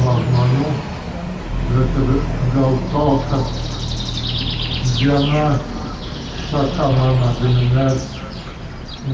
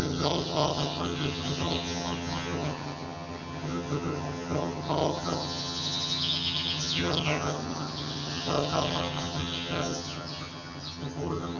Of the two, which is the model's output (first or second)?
second